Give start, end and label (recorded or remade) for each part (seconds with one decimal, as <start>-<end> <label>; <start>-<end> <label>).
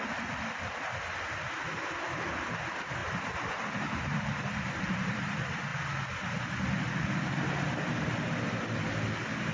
0.0-3.0 recorded; 3.0-5.2 remade; 5.2-9.5 recorded